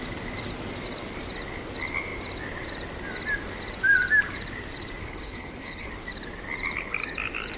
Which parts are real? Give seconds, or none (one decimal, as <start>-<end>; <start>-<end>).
0.0-5.0; 5.9-7.6

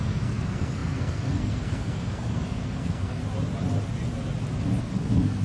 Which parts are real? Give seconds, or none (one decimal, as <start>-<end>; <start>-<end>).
3.2-4.8

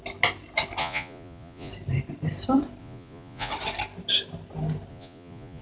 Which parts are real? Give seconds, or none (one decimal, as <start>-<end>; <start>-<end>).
0.0-0.8; 1.7-2.8; 3.5-4.9

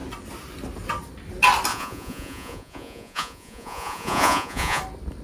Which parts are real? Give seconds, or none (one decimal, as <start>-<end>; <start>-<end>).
0.0-1.7; 4.8-5.2

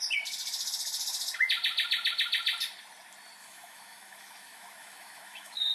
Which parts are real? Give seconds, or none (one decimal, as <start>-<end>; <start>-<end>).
0.0-3.4

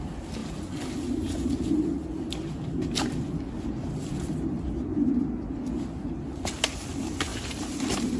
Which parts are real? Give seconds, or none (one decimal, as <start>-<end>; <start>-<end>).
0.0-8.2

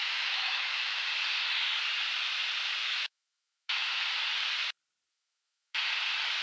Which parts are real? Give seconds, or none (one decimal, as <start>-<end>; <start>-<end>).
1.0-2.8; 4.0-5.1; 5.8-6.4

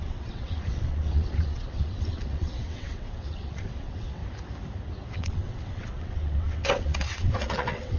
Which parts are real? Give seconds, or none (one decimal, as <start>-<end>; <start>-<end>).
4.2-5.2